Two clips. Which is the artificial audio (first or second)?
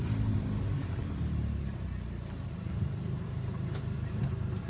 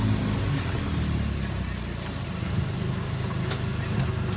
first